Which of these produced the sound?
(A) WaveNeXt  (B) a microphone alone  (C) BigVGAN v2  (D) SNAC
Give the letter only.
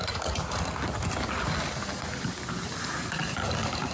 B